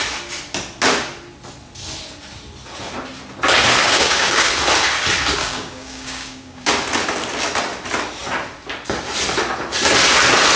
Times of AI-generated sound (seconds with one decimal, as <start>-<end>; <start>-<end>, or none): 3.8-4.5; 5.4-6.7